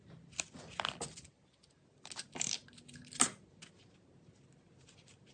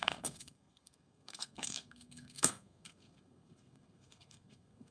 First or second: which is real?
first